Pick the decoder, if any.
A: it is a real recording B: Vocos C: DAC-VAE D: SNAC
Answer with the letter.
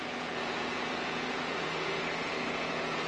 B